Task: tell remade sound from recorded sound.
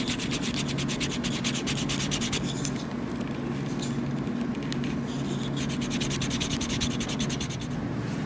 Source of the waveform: recorded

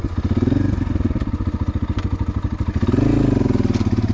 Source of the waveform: recorded